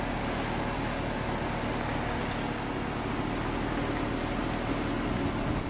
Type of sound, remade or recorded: recorded